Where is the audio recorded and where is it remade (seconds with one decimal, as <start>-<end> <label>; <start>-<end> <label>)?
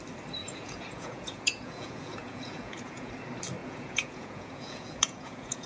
0.0-0.4 recorded; 0.4-3.1 remade; 3.1-3.6 recorded; 3.6-5.7 remade